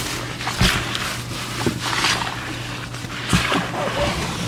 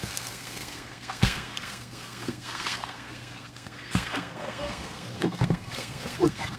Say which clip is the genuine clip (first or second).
first